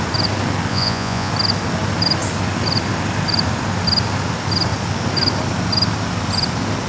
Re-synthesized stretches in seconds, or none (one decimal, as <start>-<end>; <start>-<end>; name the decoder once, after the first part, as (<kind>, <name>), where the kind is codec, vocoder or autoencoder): 0.7-1.3 (vocoder, Vocos)